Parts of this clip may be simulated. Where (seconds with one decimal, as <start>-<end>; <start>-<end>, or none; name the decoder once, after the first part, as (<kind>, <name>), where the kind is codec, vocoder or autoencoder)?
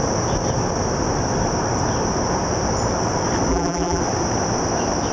3.5-4.0 (vocoder, BigVGAN v2)